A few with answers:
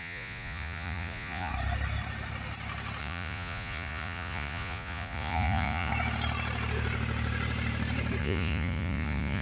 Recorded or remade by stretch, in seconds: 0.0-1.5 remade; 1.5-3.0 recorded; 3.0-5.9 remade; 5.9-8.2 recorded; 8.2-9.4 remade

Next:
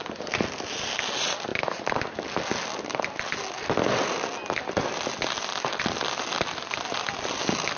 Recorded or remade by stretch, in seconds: 0.0-7.8 recorded

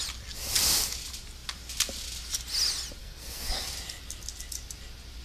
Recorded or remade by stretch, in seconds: 0.0-3.0 recorded; 3.0-3.6 remade; 3.6-5.2 recorded

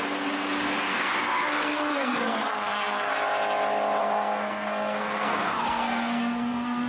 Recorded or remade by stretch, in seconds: 0.0-0.9 recorded; 0.9-3.1 remade; 3.1-4.0 recorded; 4.0-6.9 remade

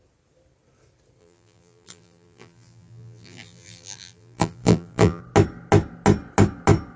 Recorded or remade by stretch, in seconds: 0.0-1.2 recorded; 1.2-5.2 remade; 5.2-7.0 recorded

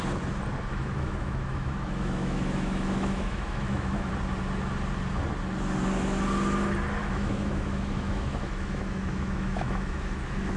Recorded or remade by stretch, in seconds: 0.0-0.7 recorded; 0.7-4.1 remade; 4.1-7.0 recorded; 7.0-10.6 remade

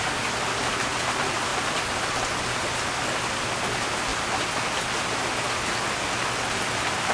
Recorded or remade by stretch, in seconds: 0.0-7.1 recorded

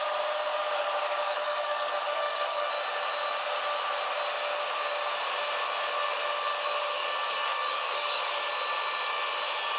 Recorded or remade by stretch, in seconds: 0.0-0.5 recorded; 0.5-2.7 remade; 2.7-7.0 recorded; 7.0-8.3 remade; 8.3-9.8 recorded